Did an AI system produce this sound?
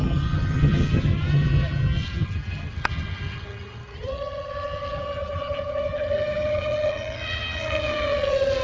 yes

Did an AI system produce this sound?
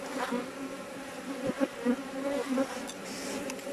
no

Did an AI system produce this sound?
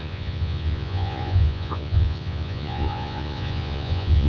yes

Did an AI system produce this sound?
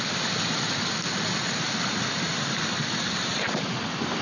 no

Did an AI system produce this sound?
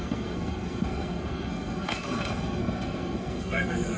yes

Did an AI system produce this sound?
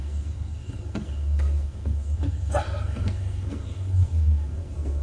yes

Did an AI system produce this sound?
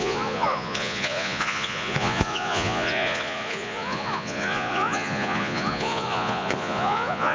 yes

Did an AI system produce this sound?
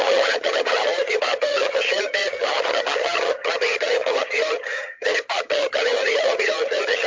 yes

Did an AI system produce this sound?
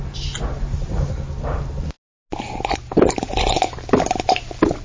no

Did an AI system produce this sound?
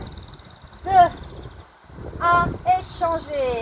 no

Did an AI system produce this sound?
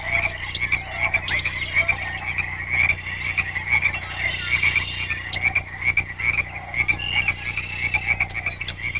no